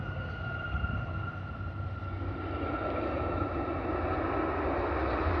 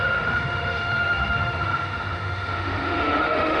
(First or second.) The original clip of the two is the first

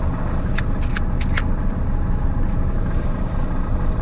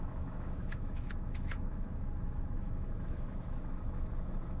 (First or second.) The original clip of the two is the first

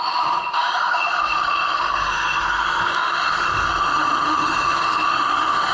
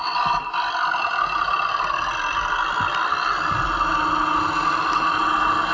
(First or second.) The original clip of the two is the second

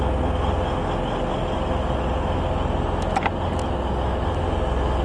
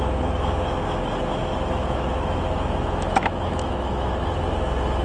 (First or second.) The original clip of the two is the first